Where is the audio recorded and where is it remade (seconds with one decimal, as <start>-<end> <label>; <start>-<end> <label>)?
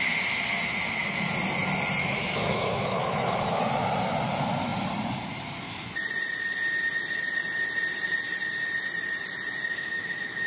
0.0-2.0 recorded; 2.0-3.6 remade; 3.6-9.7 recorded; 9.7-10.5 remade